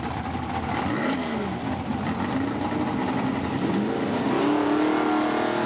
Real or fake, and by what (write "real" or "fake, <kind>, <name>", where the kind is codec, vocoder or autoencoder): real